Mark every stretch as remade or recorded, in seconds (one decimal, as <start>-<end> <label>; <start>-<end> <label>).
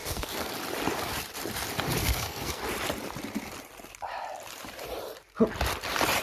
0.0-0.5 remade; 0.5-2.0 recorded; 2.0-2.6 remade; 2.6-6.2 recorded